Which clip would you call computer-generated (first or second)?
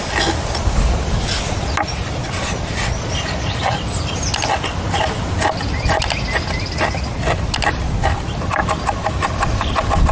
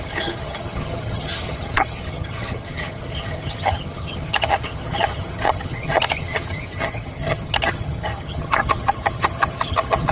second